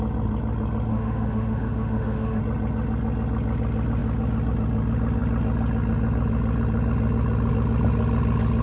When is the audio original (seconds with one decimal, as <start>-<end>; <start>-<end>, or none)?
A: 0.0-0.9; 2.4-8.6

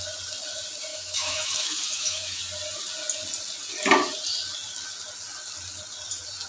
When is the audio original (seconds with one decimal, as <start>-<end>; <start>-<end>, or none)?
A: 0.0-0.9; 2.4-6.5

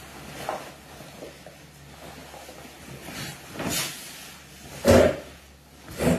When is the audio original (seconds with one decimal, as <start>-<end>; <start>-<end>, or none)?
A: 0.0-6.2

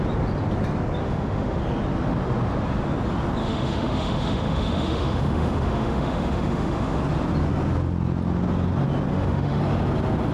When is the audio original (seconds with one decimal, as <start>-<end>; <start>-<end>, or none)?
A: 0.0-1.0; 1.6-3.4; 7.0-9.1; 9.6-10.3

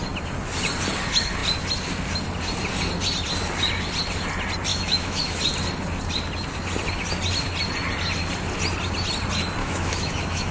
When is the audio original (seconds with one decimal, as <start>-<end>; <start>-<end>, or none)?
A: 0.0-4.7; 5.4-9.6

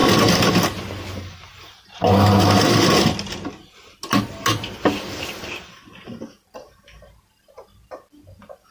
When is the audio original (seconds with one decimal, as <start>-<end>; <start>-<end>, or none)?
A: 0.0-8.7